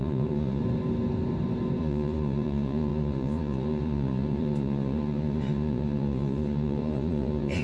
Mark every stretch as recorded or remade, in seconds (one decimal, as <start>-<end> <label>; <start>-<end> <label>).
0.0-0.6 remade; 0.6-1.8 recorded; 1.8-7.6 remade